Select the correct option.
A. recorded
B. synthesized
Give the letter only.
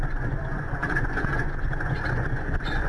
B